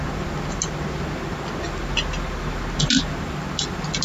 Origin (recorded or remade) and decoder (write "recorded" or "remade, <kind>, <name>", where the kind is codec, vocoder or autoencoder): recorded